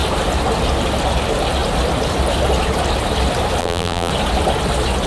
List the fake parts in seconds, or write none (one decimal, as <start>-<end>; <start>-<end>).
3.6-4.1